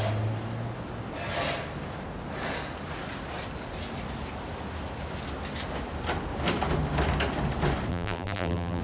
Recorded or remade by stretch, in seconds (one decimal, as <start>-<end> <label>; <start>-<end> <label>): 0.0-7.9 recorded; 7.9-8.8 remade